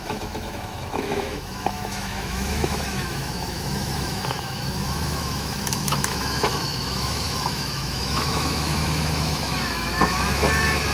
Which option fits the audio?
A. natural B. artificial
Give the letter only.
B